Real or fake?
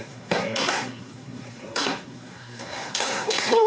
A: fake